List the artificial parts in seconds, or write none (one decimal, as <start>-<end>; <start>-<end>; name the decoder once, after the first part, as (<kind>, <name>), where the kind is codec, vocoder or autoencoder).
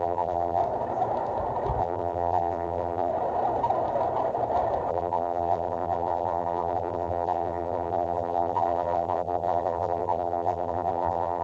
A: 0.0-0.6 (vocoder, BigVGAN v2); 1.8-3.1; 4.9-11.4